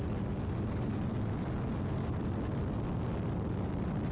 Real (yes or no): yes